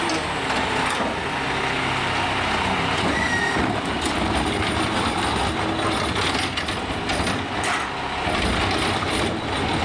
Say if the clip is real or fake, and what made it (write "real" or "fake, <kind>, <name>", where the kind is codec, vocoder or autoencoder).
real